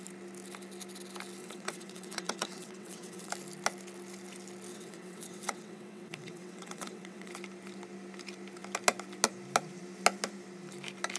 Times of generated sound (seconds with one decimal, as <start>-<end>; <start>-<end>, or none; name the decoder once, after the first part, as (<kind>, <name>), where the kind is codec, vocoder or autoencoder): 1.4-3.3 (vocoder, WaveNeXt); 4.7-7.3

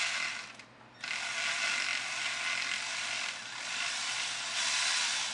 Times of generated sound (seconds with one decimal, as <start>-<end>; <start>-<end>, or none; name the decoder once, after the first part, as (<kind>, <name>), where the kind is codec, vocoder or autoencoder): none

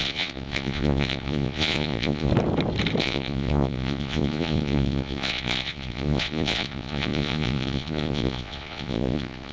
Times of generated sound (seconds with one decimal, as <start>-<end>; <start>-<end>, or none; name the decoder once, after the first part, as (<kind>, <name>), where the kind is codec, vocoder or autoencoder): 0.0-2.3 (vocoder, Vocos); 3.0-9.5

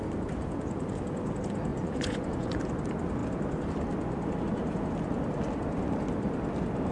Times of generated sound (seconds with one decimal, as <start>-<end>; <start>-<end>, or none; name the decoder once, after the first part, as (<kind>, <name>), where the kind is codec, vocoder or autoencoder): 1.7-2.6 (vocoder, Vocos)

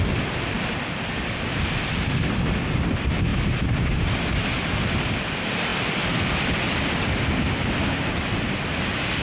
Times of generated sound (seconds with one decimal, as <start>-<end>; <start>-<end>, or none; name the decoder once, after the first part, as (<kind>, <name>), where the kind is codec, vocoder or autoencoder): 0.0-3.3 (vocoder, BigVGAN v2); 3.9-9.2

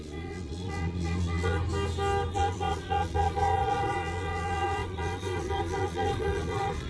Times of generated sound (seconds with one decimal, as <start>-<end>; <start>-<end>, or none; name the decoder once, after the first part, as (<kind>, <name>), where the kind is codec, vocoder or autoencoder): 0.0-1.6 (vocoder, Vocos); 2.3-6.9

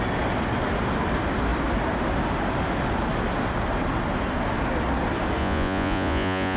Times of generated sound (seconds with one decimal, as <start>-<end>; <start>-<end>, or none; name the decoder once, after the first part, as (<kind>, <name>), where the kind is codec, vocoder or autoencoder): 5.4-6.6 (vocoder, Vocos)

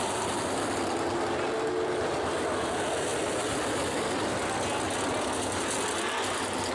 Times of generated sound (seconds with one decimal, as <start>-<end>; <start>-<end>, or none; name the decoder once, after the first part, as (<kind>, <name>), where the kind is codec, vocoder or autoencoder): none